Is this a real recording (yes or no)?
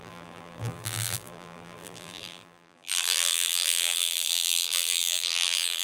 no